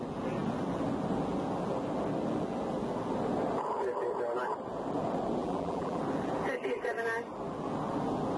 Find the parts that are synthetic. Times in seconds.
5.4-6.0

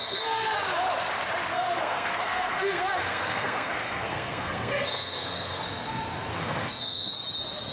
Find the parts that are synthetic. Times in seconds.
0.0-0.6; 1.5-5.6; 6.3-7.1